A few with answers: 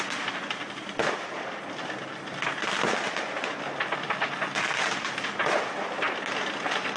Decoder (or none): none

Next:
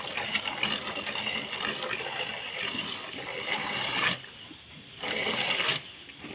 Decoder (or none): none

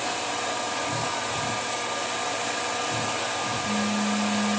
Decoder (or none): none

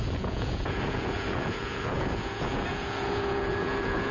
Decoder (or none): vocoder, Vocos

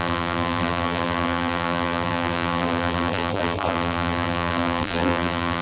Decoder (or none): vocoder, BigVGAN v2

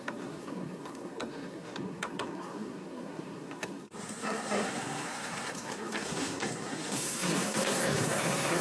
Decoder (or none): codec, SNAC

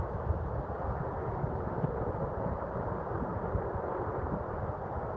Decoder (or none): none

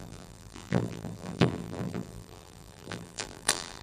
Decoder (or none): vocoder, BigVGAN v2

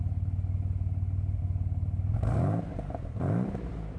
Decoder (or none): none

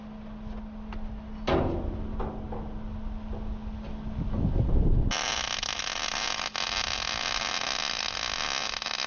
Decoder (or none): none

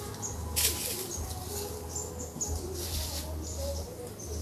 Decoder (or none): none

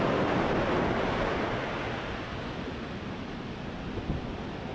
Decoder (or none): none